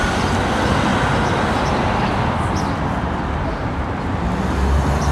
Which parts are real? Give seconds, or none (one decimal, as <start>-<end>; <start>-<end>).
0.0-0.9; 1.7-5.1